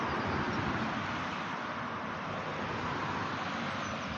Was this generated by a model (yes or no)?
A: no